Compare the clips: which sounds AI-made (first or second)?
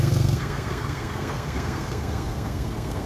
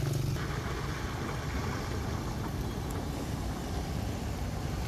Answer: first